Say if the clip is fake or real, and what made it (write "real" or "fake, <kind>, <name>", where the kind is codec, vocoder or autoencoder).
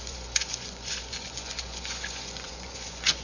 fake, vocoder, Vocos